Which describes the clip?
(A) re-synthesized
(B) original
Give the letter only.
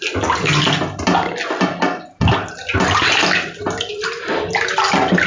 B